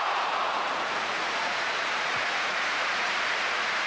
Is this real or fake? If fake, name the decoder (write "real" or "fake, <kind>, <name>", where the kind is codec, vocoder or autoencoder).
fake, vocoder, Vocos